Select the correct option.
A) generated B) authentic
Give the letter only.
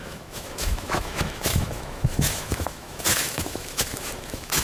A